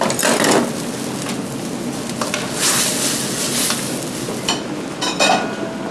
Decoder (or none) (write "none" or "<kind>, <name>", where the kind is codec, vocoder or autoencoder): none